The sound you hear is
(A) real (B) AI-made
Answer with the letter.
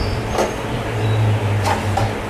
A